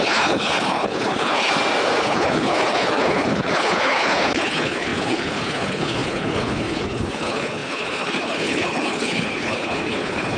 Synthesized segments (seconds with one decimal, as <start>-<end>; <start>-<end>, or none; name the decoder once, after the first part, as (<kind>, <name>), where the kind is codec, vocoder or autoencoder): 0.0-1.5 (codec, HILCodec); 2.0-10.4